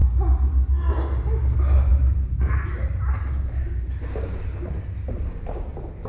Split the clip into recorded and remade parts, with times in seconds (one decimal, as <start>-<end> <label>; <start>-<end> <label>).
0.0-6.1 recorded